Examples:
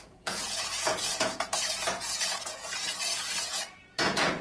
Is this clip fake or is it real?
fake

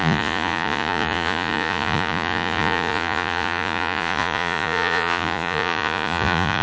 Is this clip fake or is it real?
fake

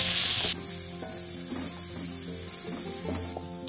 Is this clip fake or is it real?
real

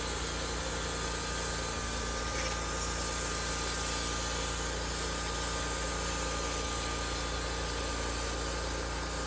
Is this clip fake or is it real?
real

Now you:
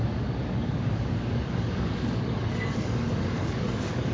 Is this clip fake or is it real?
fake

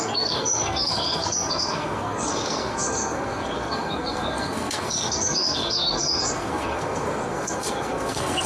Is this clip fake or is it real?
fake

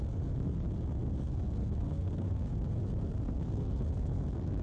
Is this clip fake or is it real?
fake